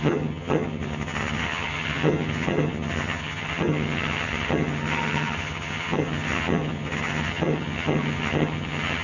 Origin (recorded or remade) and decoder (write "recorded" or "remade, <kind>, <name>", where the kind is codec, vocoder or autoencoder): remade, vocoder, HiFi-GAN